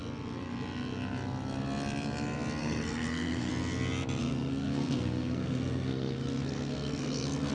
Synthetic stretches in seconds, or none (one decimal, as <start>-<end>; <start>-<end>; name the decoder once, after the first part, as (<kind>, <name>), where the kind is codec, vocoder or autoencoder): 2.6-3.5 (codec, SNAC); 4.2-7.5

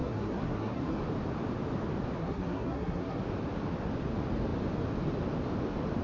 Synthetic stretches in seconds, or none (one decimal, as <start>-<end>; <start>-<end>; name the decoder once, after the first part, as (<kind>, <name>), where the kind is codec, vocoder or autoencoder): 0.0-1.0 (codec, SNAC); 2.2-3.2

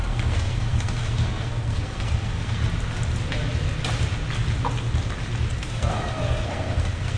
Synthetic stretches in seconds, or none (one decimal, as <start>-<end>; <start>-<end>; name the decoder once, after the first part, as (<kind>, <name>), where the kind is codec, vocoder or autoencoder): 0.0-2.6 (codec, SNAC); 5.6-7.2

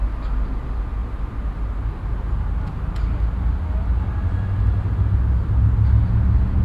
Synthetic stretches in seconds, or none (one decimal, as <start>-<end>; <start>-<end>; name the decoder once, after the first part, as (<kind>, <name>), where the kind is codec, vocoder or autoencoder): none

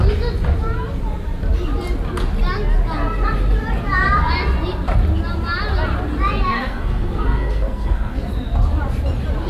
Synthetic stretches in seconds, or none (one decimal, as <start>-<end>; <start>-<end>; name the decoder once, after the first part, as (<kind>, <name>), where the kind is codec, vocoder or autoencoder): 6.5-8.3 (codec, SNAC)

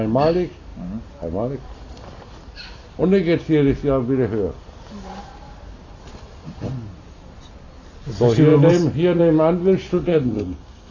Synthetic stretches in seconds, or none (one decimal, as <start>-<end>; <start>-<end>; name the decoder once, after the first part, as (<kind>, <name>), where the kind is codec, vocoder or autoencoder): 9.9-10.9 (codec, SNAC)